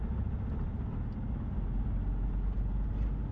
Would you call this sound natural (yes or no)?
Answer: yes